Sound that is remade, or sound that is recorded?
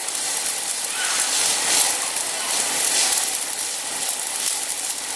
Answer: recorded